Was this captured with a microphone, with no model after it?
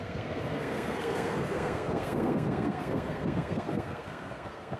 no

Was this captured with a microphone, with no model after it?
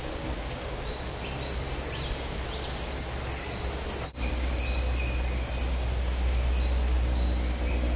yes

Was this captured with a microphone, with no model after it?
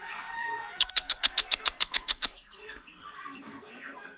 no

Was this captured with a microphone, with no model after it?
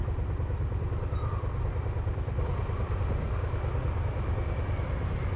yes